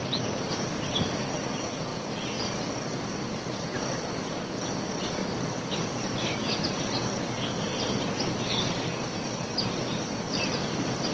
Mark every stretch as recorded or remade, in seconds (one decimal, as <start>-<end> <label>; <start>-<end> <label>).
0.0-11.1 recorded